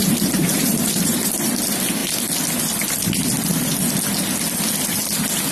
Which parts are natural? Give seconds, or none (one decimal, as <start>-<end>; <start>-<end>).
1.5-5.5